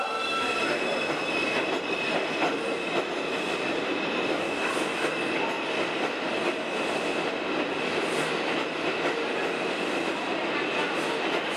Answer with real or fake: real